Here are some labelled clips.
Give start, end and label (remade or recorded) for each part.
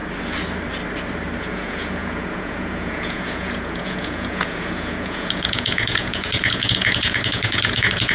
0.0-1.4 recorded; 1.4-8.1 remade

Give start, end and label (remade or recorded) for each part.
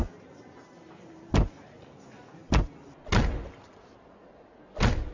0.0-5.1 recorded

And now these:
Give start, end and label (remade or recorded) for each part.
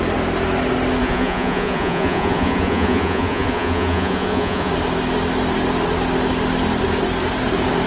0.0-1.0 recorded; 1.0-4.7 remade; 4.7-7.9 recorded